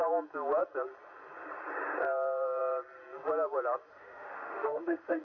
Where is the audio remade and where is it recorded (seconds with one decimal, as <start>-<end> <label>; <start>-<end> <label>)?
0.0-3.9 recorded; 3.9-5.2 remade